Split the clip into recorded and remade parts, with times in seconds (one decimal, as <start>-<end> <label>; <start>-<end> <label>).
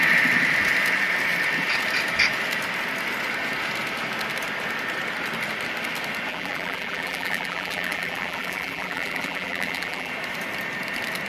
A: 0.0-6.3 recorded; 6.3-10.1 remade; 10.1-11.3 recorded